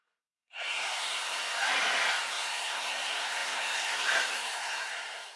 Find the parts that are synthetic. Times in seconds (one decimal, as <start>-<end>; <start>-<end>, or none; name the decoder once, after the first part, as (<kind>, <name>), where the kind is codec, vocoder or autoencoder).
0.0-1.4 (codec, SNAC); 2.3-5.4